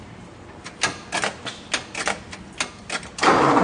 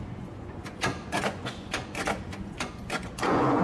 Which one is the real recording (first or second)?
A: first